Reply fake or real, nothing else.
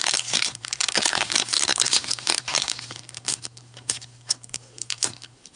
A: fake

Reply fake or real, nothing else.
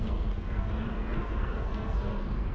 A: fake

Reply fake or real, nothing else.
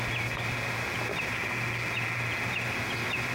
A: real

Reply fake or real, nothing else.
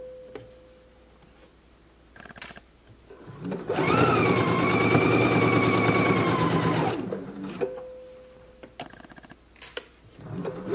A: real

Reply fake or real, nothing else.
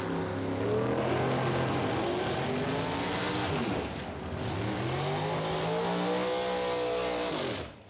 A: real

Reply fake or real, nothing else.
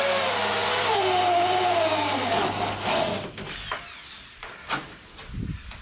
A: real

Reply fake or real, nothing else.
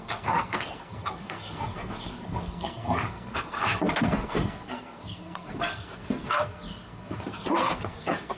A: fake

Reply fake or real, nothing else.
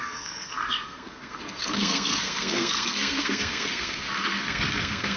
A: fake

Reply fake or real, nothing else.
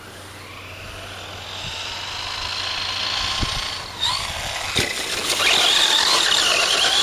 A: real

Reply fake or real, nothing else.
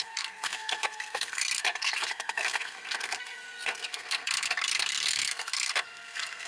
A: fake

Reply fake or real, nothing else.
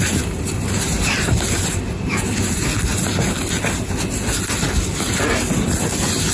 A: real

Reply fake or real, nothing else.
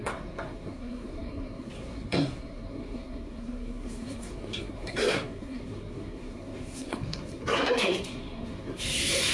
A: fake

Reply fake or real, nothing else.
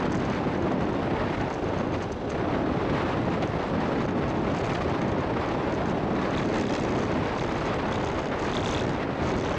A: real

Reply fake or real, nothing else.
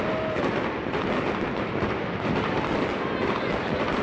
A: real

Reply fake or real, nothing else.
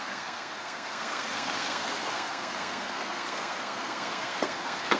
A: fake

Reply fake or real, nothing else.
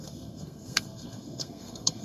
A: fake